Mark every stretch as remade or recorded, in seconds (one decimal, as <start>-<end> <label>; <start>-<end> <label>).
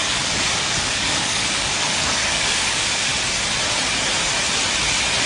0.0-3.1 remade; 3.1-5.3 recorded